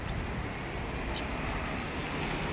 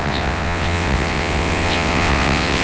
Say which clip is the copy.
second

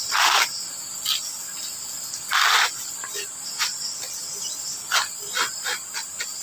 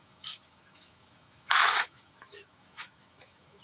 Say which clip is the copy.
second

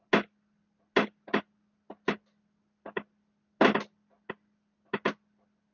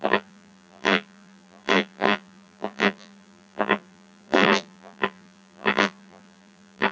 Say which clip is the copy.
second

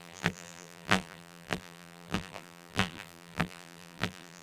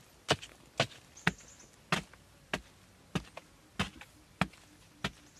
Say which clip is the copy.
first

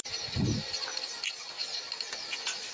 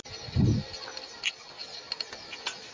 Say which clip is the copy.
first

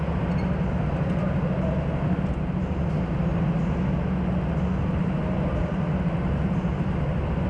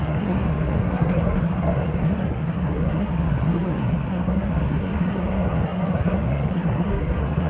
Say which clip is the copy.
second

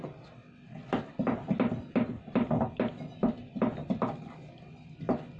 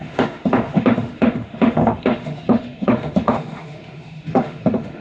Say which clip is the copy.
second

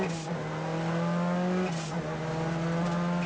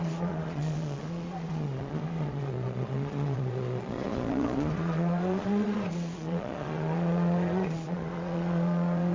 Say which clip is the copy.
second